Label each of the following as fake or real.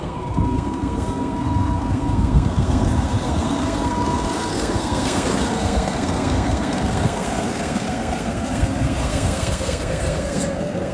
fake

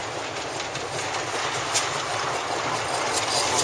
real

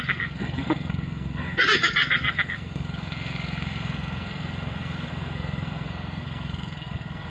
fake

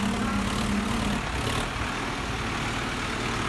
real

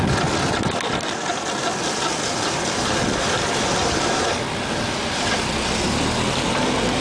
real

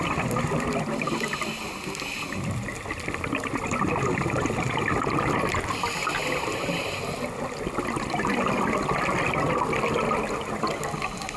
real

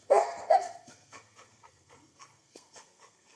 fake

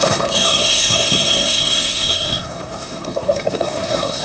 fake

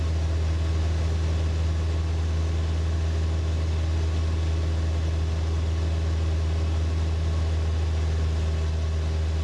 real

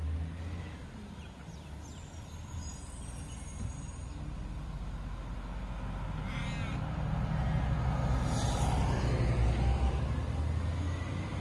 real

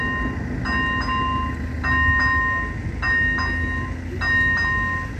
real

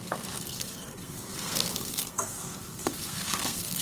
fake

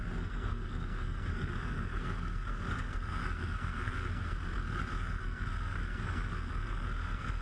fake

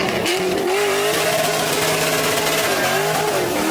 real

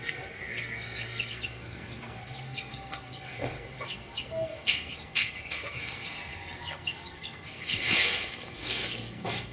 fake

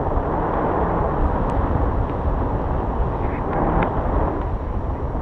real